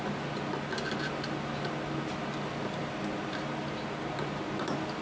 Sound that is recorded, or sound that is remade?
recorded